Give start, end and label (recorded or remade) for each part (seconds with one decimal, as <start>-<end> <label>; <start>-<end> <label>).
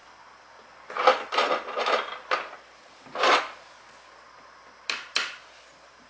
0.0-6.1 recorded